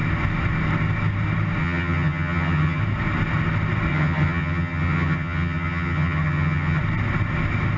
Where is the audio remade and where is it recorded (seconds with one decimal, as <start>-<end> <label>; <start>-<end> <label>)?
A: 0.0-1.6 recorded; 1.6-2.8 remade; 2.8-3.9 recorded; 3.9-6.8 remade; 6.8-7.8 recorded